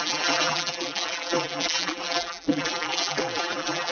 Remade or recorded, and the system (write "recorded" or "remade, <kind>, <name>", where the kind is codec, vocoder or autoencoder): remade, vocoder, BigVGAN v2